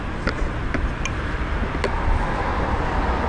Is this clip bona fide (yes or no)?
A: yes